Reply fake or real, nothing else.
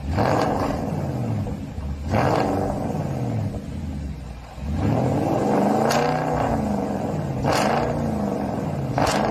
real